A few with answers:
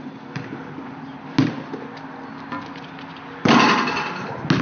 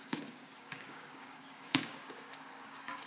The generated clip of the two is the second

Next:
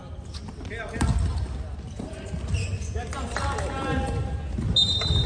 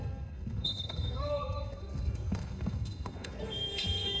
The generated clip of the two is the second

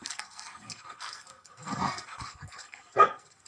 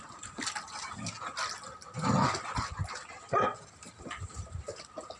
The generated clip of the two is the first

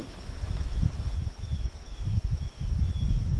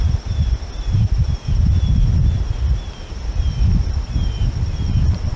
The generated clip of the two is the first